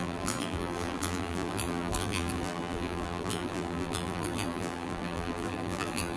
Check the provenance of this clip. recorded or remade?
remade